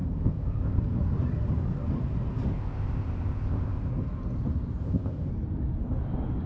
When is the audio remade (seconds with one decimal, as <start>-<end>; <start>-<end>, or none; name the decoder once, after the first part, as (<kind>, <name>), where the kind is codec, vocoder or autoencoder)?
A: 0.0-0.8 (codec, ZipCodec); 2.5-3.9; 4.8-5.3